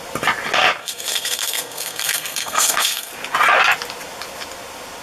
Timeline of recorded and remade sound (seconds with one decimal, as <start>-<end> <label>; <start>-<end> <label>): 0.0-0.8 recorded; 0.8-3.1 remade; 3.1-5.0 recorded